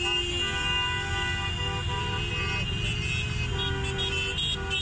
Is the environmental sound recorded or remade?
recorded